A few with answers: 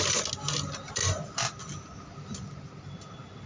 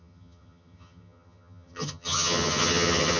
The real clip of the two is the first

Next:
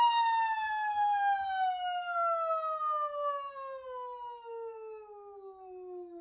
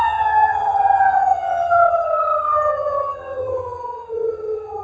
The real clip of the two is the first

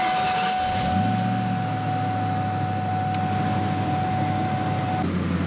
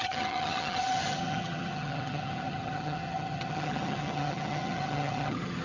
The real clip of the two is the first